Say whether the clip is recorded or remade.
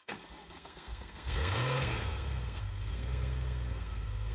remade